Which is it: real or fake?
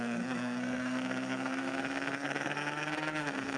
fake